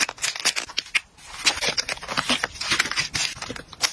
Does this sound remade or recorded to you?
recorded